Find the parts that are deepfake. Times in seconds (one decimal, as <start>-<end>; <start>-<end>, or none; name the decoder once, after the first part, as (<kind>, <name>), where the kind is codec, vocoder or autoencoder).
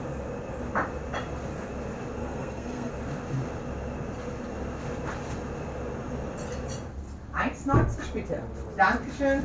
2.2-2.9 (codec, SNAC)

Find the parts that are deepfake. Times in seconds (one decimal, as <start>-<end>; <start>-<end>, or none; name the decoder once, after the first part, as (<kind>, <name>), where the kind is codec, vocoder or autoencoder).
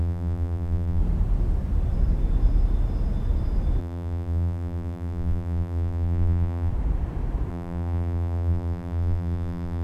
0.0-1.0 (vocoder, BigVGAN v2); 3.8-6.7; 7.5-9.8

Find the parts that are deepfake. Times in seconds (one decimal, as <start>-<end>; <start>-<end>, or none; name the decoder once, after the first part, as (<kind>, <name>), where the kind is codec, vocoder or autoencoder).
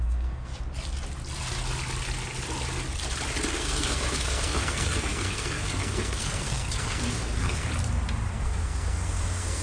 0.0-0.5 (codec, SNAC); 3.5-7.7; 8.3-9.6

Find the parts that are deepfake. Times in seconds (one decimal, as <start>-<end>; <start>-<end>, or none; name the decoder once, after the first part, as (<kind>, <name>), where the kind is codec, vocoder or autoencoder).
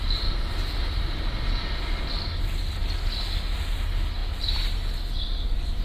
0.8-2.0 (vocoder, BigVGAN v2)